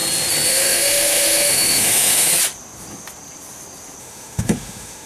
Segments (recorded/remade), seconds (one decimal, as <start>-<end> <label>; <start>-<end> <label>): 0.0-0.5 recorded; 0.5-2.3 remade; 2.3-4.0 recorded; 4.0-5.1 remade